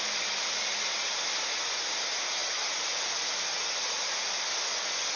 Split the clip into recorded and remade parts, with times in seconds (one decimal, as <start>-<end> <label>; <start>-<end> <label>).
0.0-5.2 recorded